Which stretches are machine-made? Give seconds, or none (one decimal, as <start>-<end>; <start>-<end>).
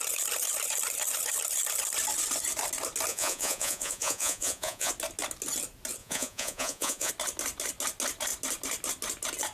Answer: 3.1-4.9; 6.0-7.1